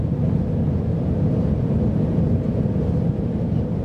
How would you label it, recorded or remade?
recorded